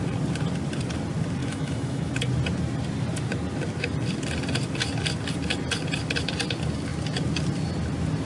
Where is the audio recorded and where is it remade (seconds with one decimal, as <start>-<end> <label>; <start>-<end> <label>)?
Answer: 0.0-1.4 recorded; 1.4-2.1 remade; 2.1-8.2 recorded